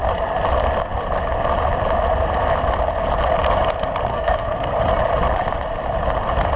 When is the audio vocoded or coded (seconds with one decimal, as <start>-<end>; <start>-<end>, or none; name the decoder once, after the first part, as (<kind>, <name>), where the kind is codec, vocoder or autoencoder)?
4.1-4.7 (codec, SNAC)